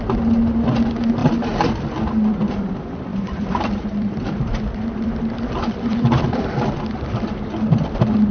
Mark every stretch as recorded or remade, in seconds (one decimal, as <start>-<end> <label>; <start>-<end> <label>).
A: 0.0-3.1 recorded; 3.1-6.4 remade; 6.4-8.3 recorded